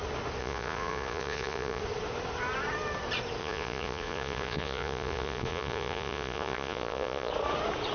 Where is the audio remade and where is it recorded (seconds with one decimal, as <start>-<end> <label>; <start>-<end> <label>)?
0.0-0.4 recorded; 0.4-1.8 remade; 1.8-3.4 recorded; 3.4-7.3 remade; 7.3-7.9 recorded